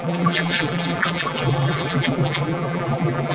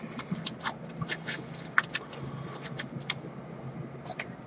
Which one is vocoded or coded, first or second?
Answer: first